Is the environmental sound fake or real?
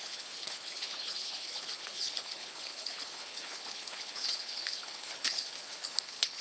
fake